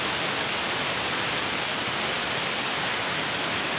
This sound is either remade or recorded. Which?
recorded